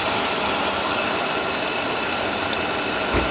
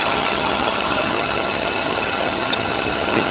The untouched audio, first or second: first